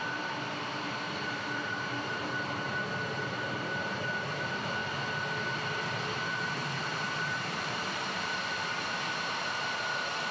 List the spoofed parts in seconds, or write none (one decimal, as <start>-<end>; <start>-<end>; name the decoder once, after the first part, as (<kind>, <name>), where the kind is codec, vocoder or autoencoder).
0.0-4.8 (vocoder, BigVGAN v2); 6.0-10.3